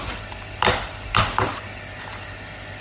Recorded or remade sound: recorded